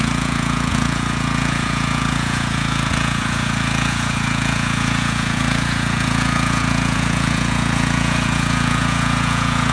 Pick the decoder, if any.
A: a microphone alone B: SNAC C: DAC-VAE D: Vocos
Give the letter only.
D